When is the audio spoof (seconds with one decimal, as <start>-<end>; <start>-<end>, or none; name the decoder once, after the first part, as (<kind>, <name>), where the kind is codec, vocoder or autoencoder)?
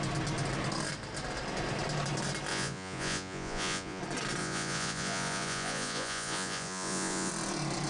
2.5-4.0 (vocoder, Vocos); 4.4-7.3